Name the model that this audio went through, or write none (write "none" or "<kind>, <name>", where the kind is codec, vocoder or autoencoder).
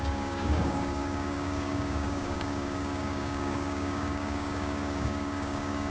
codec, DAC